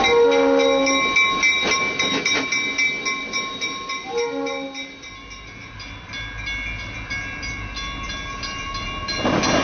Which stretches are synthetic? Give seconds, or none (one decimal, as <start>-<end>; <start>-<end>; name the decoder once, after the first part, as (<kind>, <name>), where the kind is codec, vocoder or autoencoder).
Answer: none